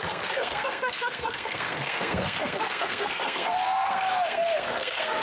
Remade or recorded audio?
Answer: remade